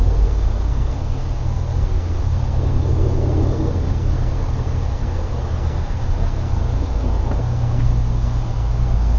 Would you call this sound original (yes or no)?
no